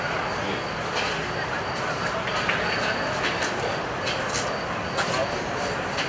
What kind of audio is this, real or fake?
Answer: real